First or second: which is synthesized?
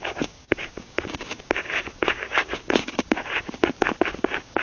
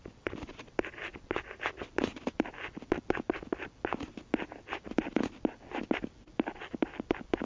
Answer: first